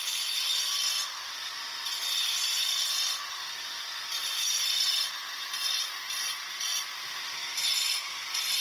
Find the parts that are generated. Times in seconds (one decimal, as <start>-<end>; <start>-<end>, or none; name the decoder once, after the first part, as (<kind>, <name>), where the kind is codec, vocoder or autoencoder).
0.0-8.6 (vocoder, BigVGAN v2)

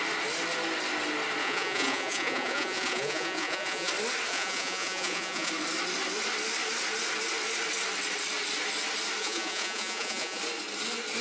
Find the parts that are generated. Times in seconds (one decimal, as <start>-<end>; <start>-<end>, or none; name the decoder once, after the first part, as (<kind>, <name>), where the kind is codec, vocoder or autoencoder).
1.4-3.9 (vocoder, Vocos); 4.3-5.5; 9.2-10.4

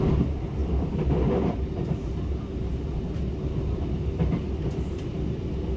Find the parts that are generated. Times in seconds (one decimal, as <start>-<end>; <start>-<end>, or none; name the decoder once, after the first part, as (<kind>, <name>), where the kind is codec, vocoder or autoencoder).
none

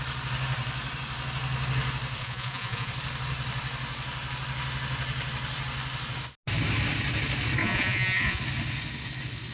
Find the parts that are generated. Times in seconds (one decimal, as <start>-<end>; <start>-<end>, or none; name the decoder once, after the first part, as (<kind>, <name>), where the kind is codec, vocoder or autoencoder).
2.2-2.9 (vocoder, Vocos); 7.6-8.4

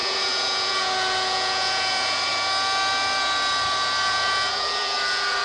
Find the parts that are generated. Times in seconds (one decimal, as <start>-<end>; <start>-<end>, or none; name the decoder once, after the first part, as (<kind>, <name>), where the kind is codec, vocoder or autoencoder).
0.0-2.3 (vocoder, Vocos); 4.0-5.4

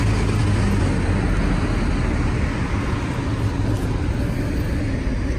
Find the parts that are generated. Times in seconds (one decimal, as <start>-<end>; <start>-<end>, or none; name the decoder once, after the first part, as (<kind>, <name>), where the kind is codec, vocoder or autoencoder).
none

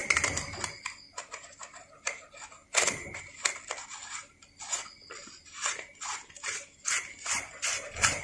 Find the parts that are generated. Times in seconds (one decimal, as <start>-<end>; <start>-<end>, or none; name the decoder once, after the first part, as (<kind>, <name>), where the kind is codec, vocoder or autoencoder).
0.0-5.0 (vocoder, BigVGAN v2)